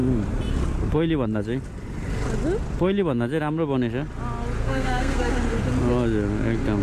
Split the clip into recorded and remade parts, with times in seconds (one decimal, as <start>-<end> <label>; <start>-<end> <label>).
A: 0.0-4.6 recorded; 4.6-5.3 remade; 5.3-6.8 recorded